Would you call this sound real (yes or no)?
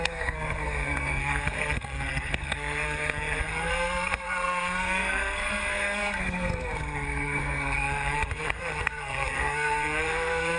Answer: no